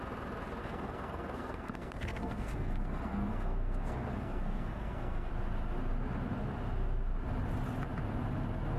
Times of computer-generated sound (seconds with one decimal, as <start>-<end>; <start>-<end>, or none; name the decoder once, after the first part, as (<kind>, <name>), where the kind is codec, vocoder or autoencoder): 0.6-5.3 (codec, SNAC)